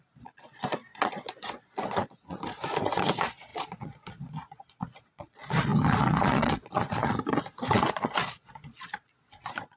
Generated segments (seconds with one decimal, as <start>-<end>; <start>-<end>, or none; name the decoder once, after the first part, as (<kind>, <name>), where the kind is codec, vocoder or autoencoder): 0.0-9.8 (vocoder, Vocos)

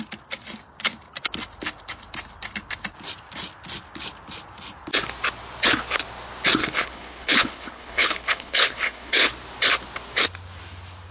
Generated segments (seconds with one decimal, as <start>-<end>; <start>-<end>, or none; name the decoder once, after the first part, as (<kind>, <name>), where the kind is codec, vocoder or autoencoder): 6.6-9.3 (codec, HILCodec)

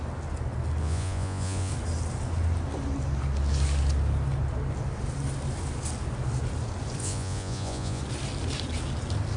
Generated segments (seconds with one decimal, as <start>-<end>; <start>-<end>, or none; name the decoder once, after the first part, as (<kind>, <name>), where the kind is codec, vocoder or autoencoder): 0.8-1.7 (vocoder, Vocos); 7.0-8.0

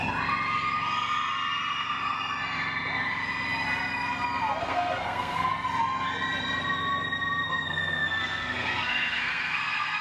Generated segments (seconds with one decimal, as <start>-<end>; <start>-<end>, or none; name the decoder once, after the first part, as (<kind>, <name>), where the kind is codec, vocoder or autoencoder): 4.6-5.5 (codec, SNAC); 7.5-10.0

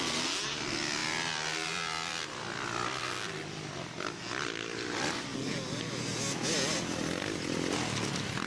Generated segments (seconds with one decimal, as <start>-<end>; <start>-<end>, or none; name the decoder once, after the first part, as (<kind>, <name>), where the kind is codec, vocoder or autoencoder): none